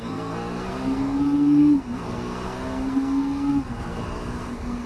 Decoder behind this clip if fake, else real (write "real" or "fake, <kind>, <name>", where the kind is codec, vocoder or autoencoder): fake, codec, SNAC